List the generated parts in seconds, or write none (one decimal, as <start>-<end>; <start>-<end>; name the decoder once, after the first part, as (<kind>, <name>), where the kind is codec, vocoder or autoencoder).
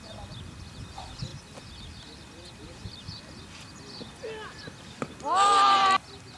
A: none